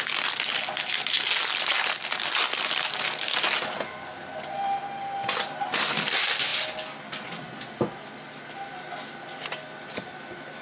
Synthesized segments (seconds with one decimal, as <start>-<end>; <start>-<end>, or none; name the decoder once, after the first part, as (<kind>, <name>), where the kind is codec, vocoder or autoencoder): none